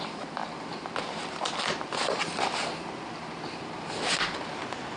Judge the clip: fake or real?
real